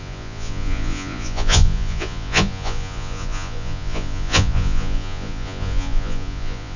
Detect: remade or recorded remade